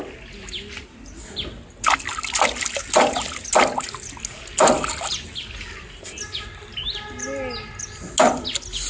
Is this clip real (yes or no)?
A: yes